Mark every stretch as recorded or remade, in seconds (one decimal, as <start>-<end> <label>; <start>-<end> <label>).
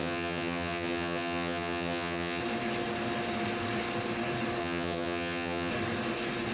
0.0-2.4 remade; 2.4-4.6 recorded; 4.6-5.7 remade; 5.7-6.5 recorded